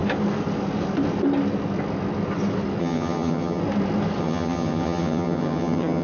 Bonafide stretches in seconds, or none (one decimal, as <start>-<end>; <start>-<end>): 0.0-2.8; 3.6-4.2